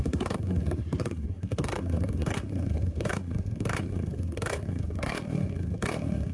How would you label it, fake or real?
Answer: fake